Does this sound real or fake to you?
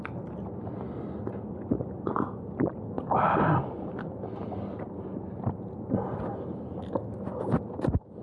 real